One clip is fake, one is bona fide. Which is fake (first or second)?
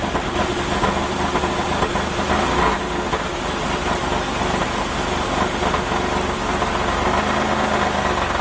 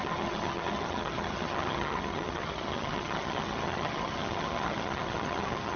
second